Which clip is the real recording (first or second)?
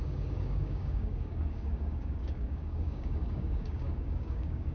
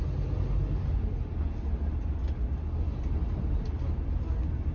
second